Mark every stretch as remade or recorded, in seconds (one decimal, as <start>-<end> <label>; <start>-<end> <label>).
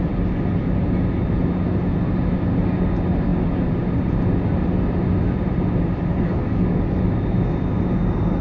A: 0.0-6.1 recorded; 6.1-7.0 remade; 7.0-8.4 recorded